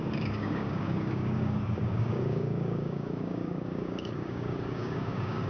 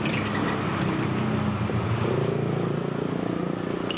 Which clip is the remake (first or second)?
first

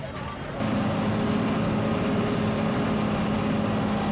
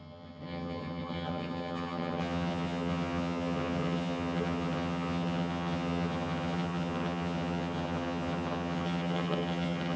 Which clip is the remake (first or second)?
second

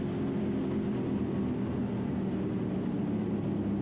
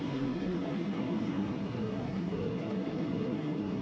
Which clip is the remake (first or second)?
second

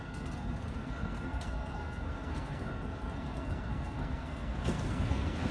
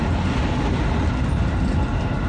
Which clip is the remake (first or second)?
first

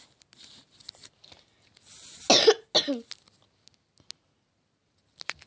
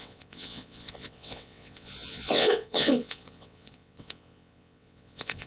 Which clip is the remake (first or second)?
second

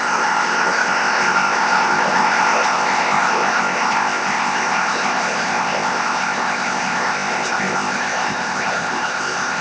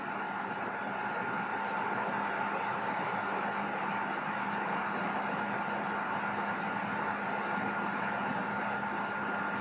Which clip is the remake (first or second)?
first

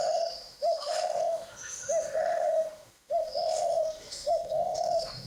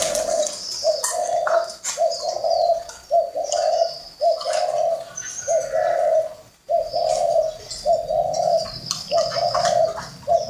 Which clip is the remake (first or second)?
first